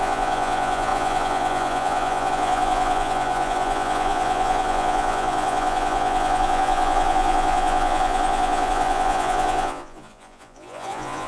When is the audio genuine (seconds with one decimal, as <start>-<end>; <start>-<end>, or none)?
none